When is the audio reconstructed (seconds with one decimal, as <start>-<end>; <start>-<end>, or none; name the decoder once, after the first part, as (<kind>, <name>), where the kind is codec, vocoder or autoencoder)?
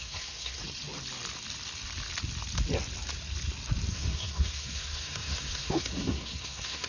0.0-0.6 (codec, SNAC); 3.9-6.9